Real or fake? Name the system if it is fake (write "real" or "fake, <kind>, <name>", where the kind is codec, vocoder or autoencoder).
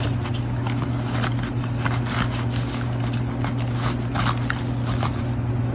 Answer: real